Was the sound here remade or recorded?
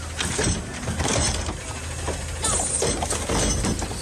recorded